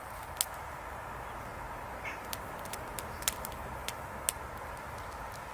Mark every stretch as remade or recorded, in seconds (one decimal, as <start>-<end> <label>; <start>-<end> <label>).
0.0-5.5 recorded